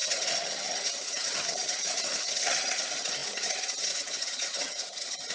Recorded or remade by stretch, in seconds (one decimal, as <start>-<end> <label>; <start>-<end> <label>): 0.0-5.3 remade